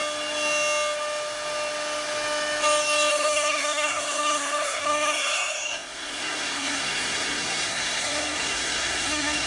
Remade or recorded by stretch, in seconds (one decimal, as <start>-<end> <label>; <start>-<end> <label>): 0.0-3.1 recorded; 3.1-9.5 remade